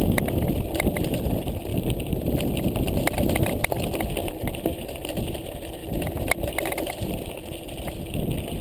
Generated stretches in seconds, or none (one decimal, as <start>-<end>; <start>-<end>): 1.7-3.6; 4.2-5.2; 5.8-7.3